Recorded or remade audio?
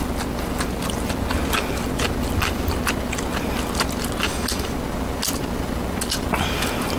recorded